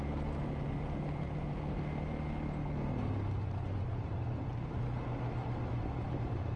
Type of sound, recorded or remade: recorded